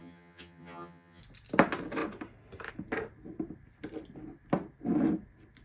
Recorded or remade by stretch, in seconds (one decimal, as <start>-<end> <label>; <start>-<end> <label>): 0.0-1.2 remade; 1.2-5.6 recorded